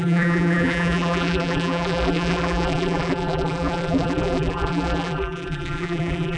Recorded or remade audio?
remade